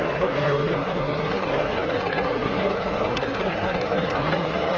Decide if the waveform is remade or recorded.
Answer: remade